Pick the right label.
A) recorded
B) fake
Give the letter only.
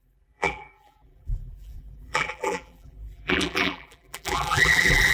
B